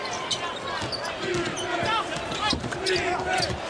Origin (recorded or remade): recorded